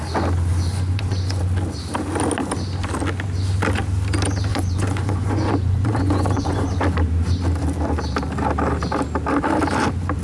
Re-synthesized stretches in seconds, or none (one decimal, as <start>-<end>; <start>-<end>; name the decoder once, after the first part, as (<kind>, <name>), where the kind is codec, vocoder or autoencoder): 0.7-1.4 (vocoder, Vocos); 4.5-6.7